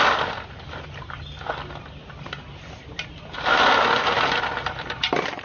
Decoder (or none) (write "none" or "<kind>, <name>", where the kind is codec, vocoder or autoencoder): none